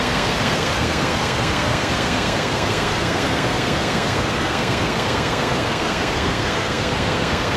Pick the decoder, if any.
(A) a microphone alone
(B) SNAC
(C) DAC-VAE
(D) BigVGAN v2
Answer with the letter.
B